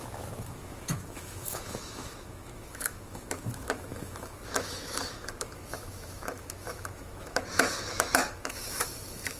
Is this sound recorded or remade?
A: remade